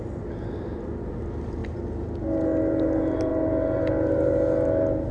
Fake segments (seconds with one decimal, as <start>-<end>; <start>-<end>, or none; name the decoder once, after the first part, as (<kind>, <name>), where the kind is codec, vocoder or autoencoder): none